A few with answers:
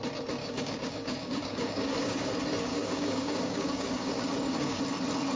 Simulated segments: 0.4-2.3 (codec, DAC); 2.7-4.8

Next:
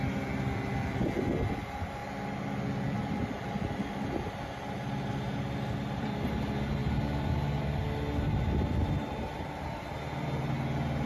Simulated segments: none

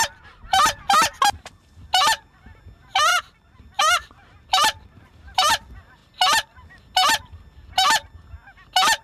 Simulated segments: 3.1-3.6 (vocoder, BigVGAN v2); 4.0-5.5

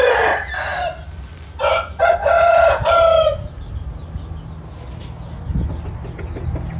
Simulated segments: none

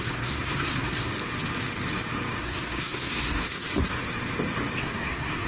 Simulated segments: 0.0-1.1 (codec, SNAC); 2.4-3.6; 4.8-5.5